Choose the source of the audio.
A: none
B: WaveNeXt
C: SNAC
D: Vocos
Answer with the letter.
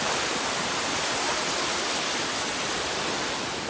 A